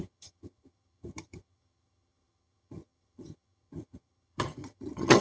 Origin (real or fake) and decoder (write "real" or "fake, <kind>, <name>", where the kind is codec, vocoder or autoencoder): fake, vocoder, HiFi-GAN